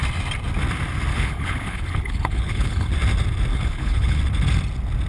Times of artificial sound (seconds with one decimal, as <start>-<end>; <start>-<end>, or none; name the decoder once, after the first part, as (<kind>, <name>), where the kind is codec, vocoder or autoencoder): 1.1-2.9 (codec, HILCodec); 3.5-4.2